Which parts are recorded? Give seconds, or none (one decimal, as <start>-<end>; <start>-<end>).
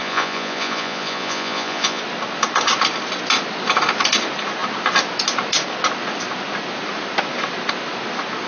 2.0-8.5